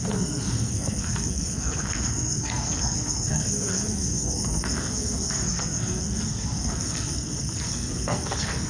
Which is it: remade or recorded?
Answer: remade